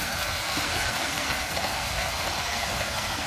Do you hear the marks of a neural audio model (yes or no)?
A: yes